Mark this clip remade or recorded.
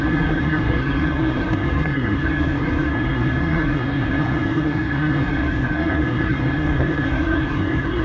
remade